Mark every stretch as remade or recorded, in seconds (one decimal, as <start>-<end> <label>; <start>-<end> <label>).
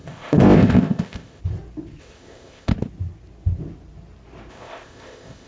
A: 0.0-1.4 remade; 1.4-2.0 recorded; 2.0-2.7 remade; 2.7-4.5 recorded; 4.5-5.5 remade